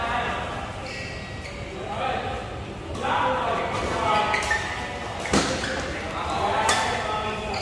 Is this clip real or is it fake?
real